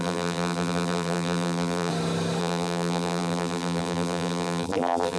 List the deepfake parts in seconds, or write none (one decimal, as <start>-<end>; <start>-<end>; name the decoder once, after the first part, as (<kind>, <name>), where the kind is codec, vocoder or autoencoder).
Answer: 0.0-1.9 (vocoder, BigVGAN v2); 2.4-5.2